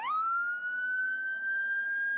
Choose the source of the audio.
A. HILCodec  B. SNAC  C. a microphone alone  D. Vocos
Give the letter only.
C